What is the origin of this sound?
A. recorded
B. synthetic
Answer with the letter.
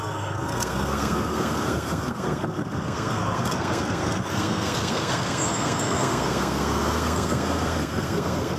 B